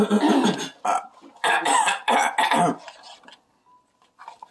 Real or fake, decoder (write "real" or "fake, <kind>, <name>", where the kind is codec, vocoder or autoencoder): real